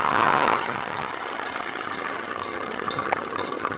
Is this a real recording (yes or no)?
no